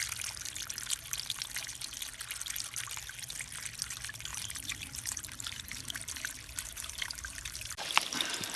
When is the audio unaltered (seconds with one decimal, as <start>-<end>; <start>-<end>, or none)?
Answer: 0.0-4.3